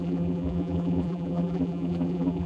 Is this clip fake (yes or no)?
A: yes